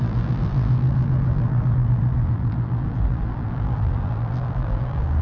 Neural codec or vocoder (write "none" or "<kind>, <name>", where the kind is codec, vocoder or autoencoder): vocoder, BigVGAN v2